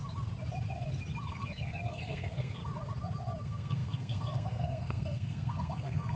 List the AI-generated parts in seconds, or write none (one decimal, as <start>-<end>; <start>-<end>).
1.3-2.6; 3.4-6.2

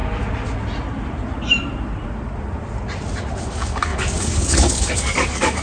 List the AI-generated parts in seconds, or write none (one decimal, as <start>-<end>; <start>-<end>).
3.4-5.6